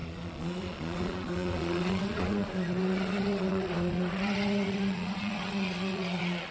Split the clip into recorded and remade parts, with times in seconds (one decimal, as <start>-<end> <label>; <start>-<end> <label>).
0.0-6.5 remade